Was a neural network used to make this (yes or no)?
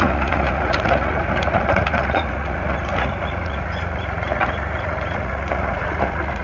yes